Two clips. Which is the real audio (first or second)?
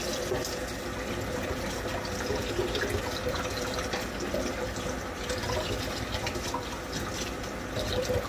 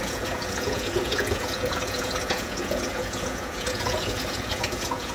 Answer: first